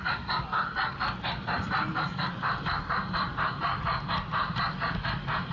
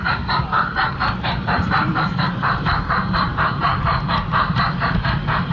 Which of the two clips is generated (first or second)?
second